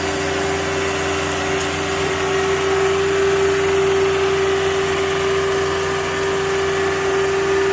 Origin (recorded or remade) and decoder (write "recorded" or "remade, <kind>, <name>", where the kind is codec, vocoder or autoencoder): recorded